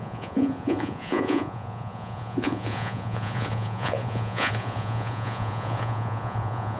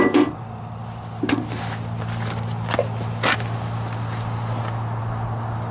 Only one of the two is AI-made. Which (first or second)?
first